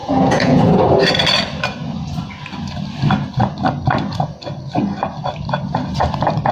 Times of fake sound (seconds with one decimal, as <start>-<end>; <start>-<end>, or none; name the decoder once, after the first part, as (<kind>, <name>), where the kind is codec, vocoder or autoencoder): 0.0-0.8 (vocoder, Vocos)